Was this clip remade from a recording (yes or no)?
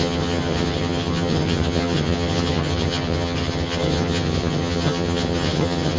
yes